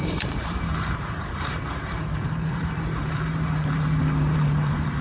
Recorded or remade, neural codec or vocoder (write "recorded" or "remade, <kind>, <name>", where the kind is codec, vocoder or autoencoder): remade, vocoder, BigVGAN v2